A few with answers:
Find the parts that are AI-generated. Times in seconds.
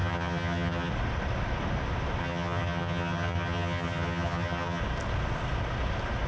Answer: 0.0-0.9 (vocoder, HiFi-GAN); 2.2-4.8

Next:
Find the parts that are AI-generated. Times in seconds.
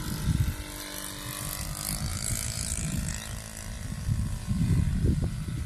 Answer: 2.1-3.1 (vocoder, BigVGAN v2)